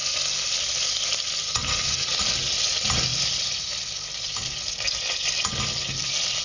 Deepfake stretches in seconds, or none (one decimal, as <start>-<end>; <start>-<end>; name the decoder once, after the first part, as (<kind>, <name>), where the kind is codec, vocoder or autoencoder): none

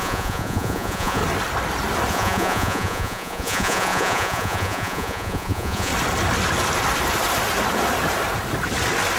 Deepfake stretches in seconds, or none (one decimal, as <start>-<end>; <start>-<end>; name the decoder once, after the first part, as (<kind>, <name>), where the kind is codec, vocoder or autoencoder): 0.0-1.2 (vocoder, Vocos); 2.1-5.9

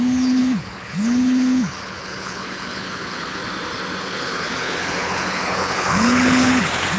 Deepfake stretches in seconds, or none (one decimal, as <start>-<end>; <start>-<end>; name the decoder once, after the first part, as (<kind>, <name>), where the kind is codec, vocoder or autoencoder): 0.0-3.4 (codec, HILCodec); 4.0-7.0